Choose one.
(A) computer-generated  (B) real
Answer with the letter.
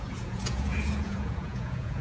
A